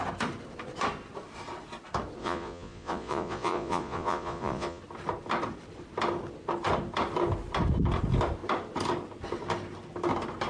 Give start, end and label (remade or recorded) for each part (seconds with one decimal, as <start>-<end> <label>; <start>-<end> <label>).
0.0-2.2 recorded; 2.2-4.8 remade; 4.8-10.5 recorded